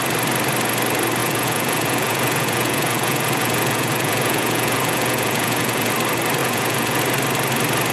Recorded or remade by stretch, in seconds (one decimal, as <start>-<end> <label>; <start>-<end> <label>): 0.0-1.2 recorded; 1.2-5.9 remade; 5.9-6.4 recorded; 6.4-7.0 remade; 7.0-7.9 recorded